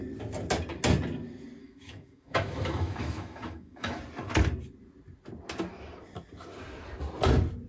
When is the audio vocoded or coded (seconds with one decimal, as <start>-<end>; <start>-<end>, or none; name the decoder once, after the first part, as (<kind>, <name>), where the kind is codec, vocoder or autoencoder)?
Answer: 1.6-4.0 (autoencoder, DAC-VAE)